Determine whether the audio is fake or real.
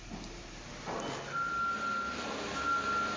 real